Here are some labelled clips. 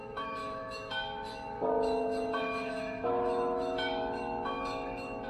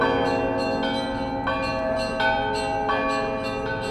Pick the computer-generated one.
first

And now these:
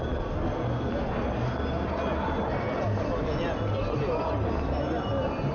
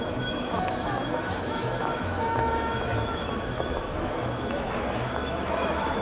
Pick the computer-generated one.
second